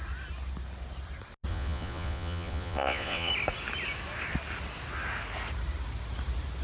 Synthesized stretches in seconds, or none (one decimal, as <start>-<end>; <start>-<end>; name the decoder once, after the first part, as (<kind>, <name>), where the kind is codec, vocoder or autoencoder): 1.5-3.3 (vocoder, Vocos)